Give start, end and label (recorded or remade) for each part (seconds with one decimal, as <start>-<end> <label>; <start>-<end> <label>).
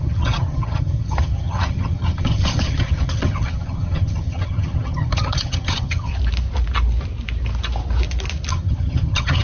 0.0-6.1 remade; 6.1-8.5 recorded; 8.5-9.4 remade